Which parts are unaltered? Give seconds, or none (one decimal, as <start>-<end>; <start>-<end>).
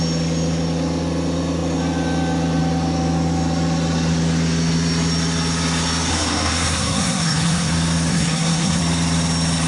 0.0-6.1; 7.7-8.1; 8.8-9.7